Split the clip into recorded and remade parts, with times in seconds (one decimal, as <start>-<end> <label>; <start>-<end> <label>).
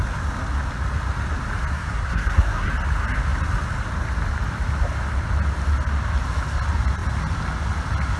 0.0-1.7 recorded; 1.7-2.7 remade; 2.7-8.2 recorded